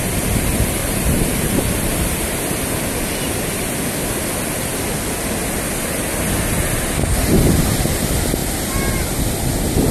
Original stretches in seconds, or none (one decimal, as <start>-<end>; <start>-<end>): 0.0-0.8; 2.3-9.9